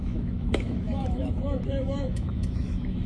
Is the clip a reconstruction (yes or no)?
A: yes